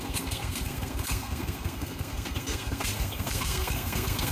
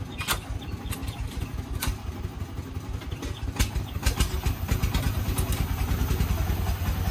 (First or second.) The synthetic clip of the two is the first